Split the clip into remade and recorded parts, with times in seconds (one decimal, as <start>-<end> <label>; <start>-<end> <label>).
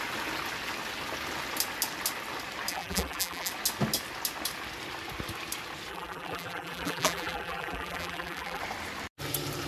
0.0-2.7 recorded; 2.7-3.5 remade; 3.5-5.9 recorded; 5.9-8.6 remade; 8.6-9.7 recorded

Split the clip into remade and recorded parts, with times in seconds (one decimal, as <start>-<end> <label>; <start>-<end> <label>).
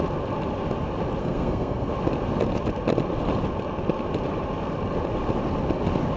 0.0-1.2 recorded; 1.2-1.9 remade; 1.9-6.2 recorded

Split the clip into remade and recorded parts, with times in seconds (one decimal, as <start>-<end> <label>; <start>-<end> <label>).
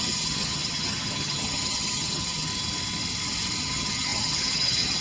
0.0-2.5 remade; 2.5-3.6 recorded; 3.6-5.0 remade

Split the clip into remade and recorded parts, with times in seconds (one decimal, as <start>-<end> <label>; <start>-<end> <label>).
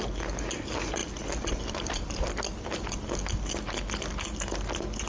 0.0-5.1 recorded